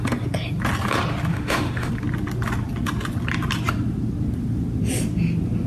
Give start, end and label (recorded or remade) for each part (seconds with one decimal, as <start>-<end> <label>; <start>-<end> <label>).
0.0-1.3 recorded; 1.3-1.9 remade; 1.9-5.7 recorded